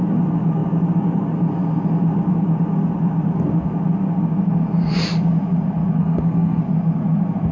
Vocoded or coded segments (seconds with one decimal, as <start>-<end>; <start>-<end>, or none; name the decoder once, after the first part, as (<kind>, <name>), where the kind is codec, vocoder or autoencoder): 6.0-6.6 (codec, SNAC)